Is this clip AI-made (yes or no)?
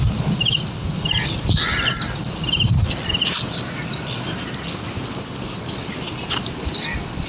no